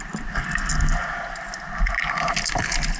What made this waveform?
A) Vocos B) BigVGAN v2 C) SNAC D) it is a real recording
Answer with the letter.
D